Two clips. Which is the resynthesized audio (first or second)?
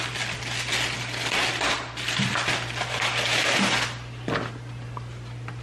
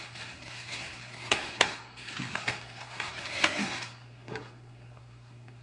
second